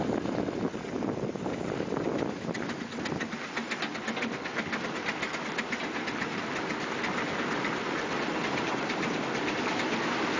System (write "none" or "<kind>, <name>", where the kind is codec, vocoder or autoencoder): none